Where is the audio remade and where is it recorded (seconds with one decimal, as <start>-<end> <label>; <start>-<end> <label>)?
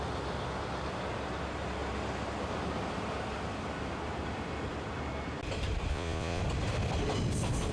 0.0-5.9 recorded; 5.9-6.4 remade; 6.4-7.7 recorded